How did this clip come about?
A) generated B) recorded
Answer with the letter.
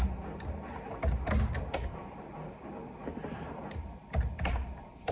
B